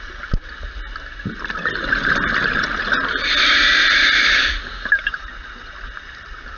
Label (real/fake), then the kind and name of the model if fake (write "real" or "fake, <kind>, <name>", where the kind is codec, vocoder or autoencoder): real